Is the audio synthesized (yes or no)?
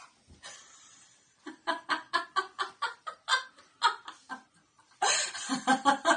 yes